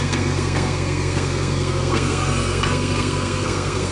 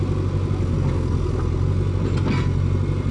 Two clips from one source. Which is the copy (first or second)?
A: first